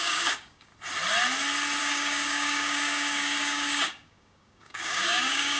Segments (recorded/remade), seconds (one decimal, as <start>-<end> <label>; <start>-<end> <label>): 0.0-0.7 remade; 0.7-1.8 recorded; 1.8-5.6 remade

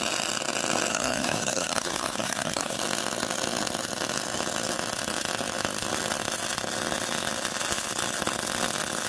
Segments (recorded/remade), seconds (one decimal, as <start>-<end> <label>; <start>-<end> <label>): 0.0-0.9 recorded; 0.9-2.8 remade; 2.8-9.1 recorded

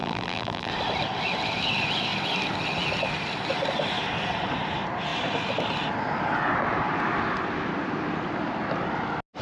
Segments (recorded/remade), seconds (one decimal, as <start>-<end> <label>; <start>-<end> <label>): 0.0-0.7 remade; 0.7-9.4 recorded